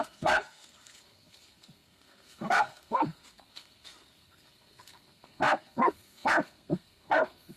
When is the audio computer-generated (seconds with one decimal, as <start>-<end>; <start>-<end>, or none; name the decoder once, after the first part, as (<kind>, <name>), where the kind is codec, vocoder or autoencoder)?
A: 0.0-7.6 (codec, SNAC)